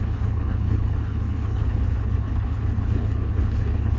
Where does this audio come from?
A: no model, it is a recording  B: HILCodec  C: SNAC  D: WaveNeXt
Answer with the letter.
B